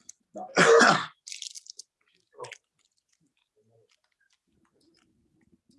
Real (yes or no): yes